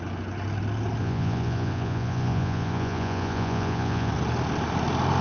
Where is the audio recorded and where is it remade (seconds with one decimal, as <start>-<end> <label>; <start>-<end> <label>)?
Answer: 0.0-1.0 recorded; 1.0-4.1 remade; 4.1-5.2 recorded